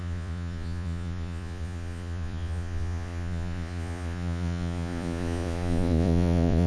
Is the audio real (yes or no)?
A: no